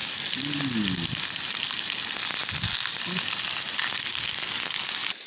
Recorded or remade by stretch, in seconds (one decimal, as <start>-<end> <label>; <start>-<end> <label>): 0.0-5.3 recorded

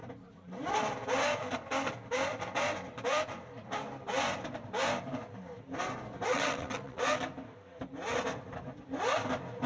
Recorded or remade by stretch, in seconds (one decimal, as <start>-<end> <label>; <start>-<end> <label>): 0.0-6.3 recorded; 6.3-7.0 remade; 7.0-9.7 recorded

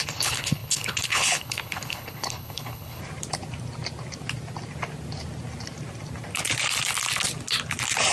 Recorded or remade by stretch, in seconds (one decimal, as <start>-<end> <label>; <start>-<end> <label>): 0.0-3.0 remade; 3.0-8.1 recorded

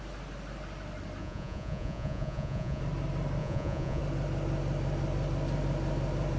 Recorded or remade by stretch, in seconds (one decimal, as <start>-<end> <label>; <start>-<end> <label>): 0.0-1.2 recorded; 1.2-2.8 remade; 2.8-3.4 recorded; 3.4-4.0 remade; 4.0-6.4 recorded